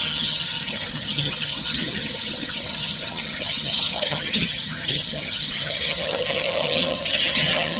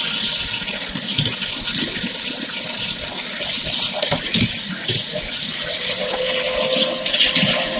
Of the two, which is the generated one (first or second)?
first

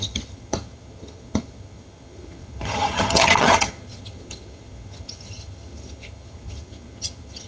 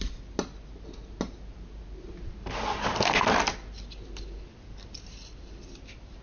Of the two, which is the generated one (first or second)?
first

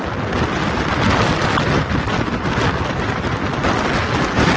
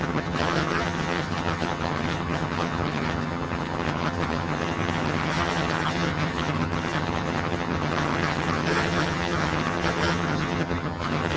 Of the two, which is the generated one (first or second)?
second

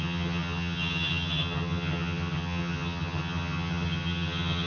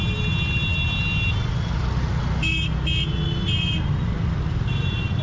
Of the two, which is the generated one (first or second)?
first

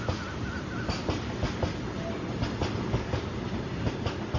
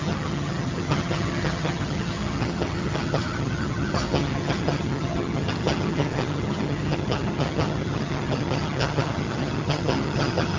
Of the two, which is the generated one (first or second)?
second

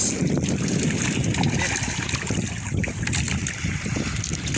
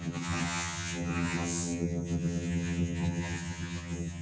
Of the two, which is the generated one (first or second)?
second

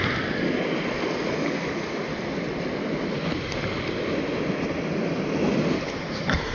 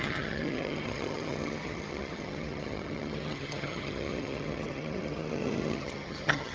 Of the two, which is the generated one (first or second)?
second